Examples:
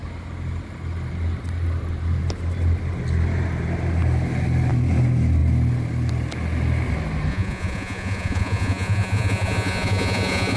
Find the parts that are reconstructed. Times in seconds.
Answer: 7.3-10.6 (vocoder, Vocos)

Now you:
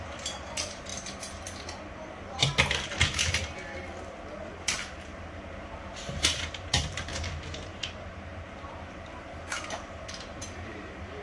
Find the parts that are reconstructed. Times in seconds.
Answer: 0.0-0.9 (vocoder, BigVGAN v2); 4.5-7.1; 7.7-11.2

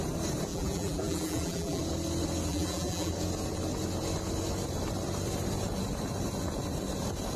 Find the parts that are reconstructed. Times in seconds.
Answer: 0.5-1.8 (vocoder, BigVGAN v2); 2.5-3.1